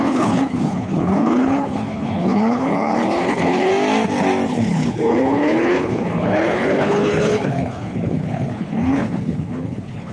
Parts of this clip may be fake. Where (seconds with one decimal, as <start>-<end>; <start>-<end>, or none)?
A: 0.0-3.7; 4.5-10.1